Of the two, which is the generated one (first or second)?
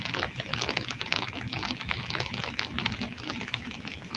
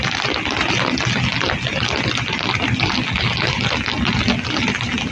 first